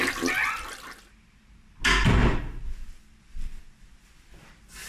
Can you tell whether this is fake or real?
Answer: real